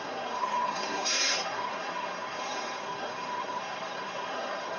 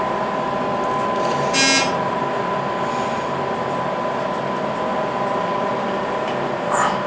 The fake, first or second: first